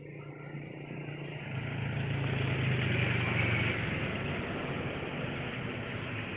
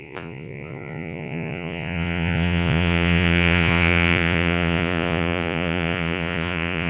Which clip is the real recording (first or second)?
first